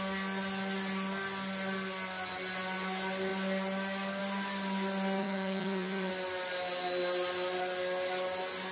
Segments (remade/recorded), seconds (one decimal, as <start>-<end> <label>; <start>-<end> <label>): 0.0-5.2 recorded; 5.2-6.1 remade; 6.1-8.7 recorded